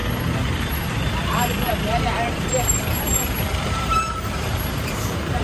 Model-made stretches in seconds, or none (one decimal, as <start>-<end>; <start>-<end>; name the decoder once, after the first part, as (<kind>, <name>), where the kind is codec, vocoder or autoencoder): 0.0-5.4 (vocoder, BigVGAN v2)